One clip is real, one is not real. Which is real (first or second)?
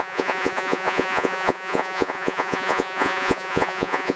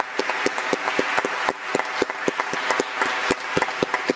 second